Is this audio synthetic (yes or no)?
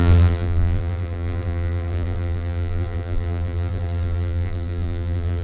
yes